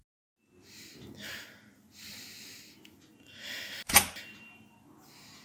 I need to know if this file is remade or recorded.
recorded